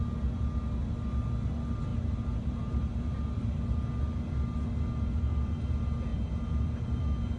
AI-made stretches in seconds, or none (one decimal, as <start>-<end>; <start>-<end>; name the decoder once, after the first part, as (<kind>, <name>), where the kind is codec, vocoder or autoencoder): 1.9-3.9 (vocoder, BigVGAN v2); 6.1-7.0